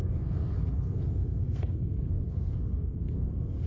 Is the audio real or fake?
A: fake